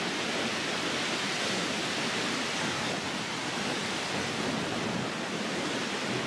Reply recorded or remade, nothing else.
recorded